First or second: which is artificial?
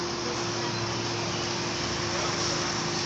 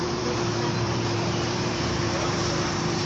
second